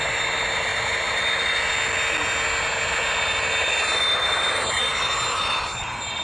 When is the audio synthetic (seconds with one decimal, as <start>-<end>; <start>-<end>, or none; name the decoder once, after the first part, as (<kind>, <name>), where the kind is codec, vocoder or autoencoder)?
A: none